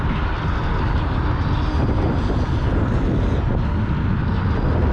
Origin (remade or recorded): recorded